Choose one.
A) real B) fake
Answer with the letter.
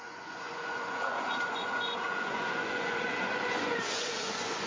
B